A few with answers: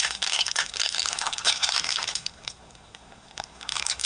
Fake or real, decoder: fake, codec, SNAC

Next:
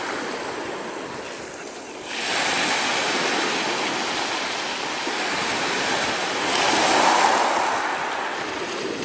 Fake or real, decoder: real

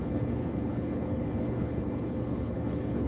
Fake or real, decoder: fake, codec, HILCodec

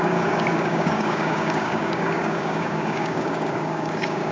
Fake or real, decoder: fake, codec, DAC